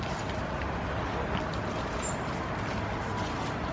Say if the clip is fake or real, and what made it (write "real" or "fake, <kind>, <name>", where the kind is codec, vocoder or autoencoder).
real